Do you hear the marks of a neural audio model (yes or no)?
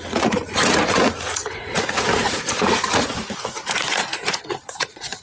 yes